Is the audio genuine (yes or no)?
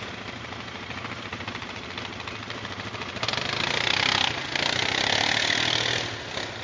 yes